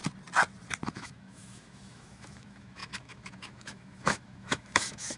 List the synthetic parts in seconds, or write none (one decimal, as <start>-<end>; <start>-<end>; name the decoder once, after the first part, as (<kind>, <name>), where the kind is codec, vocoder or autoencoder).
0.9-5.2 (autoencoder, DAC-VAE)